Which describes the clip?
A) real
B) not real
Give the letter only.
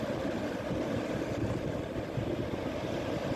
A